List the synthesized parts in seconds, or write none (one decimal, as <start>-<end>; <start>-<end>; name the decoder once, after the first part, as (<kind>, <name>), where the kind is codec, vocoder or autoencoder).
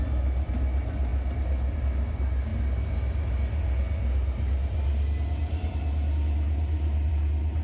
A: none